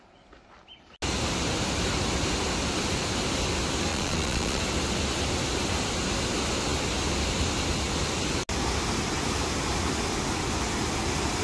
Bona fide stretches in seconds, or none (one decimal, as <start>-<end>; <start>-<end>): 0.0-3.9; 4.6-11.4